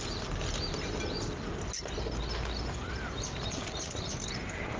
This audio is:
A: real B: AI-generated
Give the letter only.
A